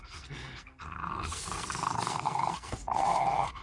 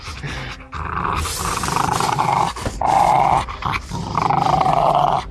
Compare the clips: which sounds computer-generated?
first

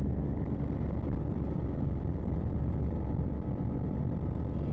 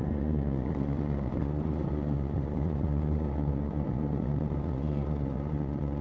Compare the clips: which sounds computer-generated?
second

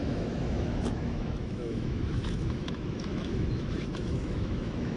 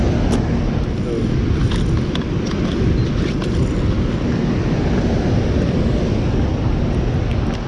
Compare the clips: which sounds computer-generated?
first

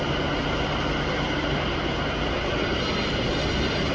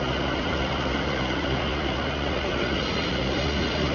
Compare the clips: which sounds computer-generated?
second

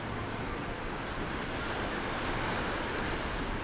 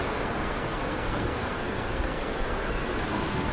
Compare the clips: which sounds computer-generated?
second